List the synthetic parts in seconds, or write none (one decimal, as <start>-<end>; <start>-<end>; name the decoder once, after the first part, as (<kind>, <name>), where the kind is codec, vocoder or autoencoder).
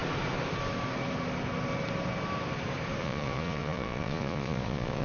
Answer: 3.0-5.0 (vocoder, Vocos)